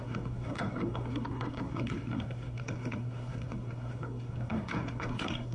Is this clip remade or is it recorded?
remade